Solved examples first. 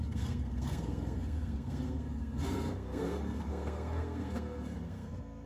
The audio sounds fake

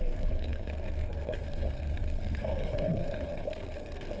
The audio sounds fake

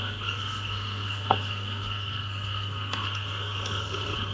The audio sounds fake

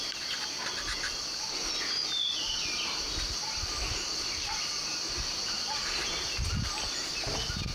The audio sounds real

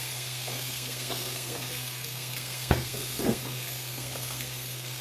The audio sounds fake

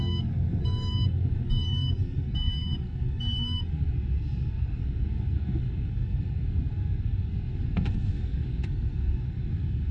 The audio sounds fake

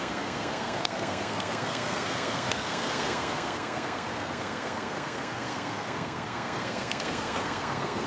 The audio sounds fake